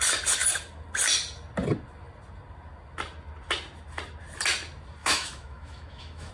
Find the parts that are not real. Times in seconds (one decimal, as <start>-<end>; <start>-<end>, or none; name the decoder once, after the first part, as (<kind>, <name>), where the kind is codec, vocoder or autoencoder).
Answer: 5.0-6.3 (autoencoder, DAC-VAE)